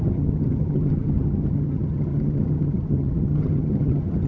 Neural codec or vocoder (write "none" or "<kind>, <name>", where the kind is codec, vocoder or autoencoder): vocoder, HiFi-GAN